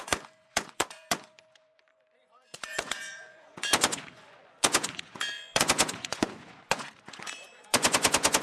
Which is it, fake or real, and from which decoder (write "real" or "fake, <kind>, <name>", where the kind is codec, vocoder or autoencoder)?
fake, vocoder, Vocos